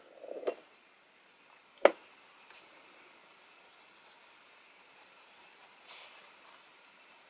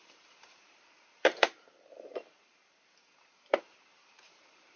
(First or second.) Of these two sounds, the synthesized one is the second